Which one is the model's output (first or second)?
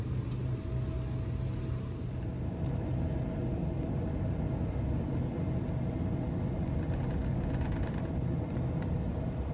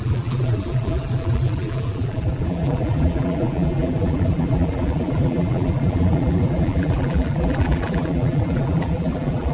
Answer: second